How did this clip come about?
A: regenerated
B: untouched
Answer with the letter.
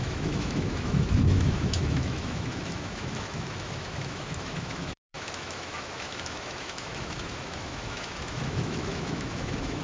A